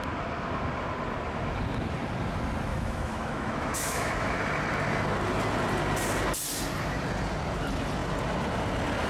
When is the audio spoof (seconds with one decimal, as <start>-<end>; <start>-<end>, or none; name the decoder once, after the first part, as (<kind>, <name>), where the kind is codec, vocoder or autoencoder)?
2.7-4.4 (autoencoder, DAC-VAE)